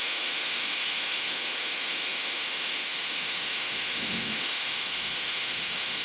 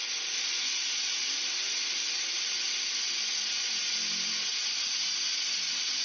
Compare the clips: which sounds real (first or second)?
second